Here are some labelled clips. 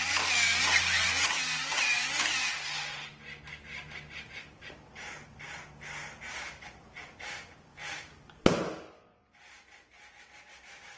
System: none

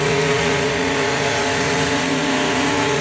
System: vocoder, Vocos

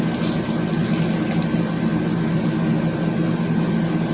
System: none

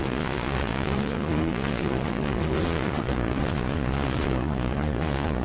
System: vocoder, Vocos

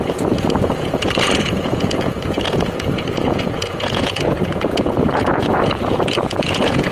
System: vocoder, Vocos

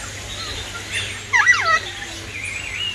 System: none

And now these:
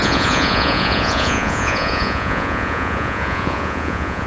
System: vocoder, Vocos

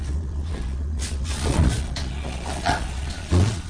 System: vocoder, Vocos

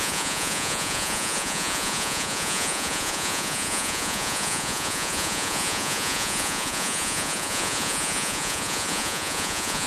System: vocoder, Vocos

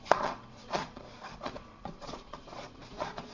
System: vocoder, Vocos